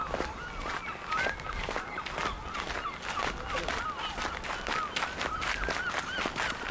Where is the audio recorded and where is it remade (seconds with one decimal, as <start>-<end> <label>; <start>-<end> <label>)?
0.0-6.7 recorded